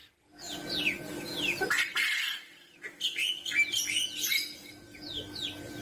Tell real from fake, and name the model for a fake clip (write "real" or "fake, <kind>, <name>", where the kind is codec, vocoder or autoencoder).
real